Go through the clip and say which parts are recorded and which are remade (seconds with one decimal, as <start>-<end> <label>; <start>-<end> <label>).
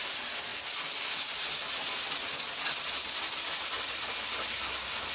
0.0-5.1 recorded